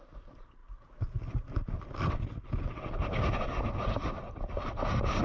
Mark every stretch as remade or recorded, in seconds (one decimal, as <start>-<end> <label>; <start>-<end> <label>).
0.0-0.6 remade; 0.6-3.6 recorded; 3.6-5.2 remade